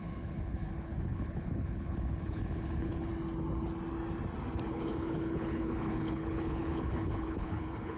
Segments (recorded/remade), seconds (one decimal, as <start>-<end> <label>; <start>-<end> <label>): 0.0-3.1 remade; 3.1-4.7 recorded; 4.7-8.0 remade

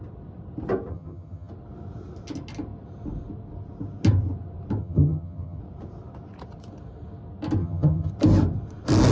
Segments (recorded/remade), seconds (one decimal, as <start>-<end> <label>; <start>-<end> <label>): 0.0-0.9 recorded; 0.9-1.5 remade; 1.5-4.8 recorded; 4.8-5.6 remade; 5.6-7.6 recorded; 7.6-8.1 remade; 8.1-9.1 recorded